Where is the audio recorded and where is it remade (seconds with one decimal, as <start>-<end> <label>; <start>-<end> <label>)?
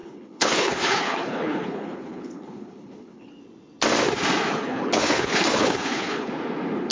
0.0-3.3 remade; 3.3-4.5 recorded; 4.5-6.3 remade; 6.3-6.9 recorded